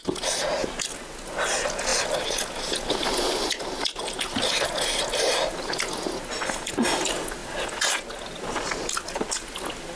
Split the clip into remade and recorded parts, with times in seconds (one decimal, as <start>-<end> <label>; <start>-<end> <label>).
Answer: 0.0-10.0 recorded